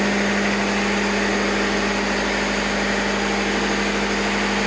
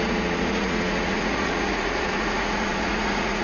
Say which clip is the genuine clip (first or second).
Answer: first